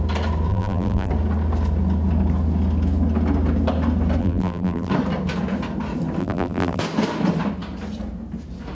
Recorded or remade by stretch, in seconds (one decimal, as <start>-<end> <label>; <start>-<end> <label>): 0.0-0.5 recorded; 0.5-1.1 remade; 1.1-4.2 recorded; 4.2-4.9 remade; 4.9-6.2 recorded; 6.2-6.8 remade; 6.8-8.7 recorded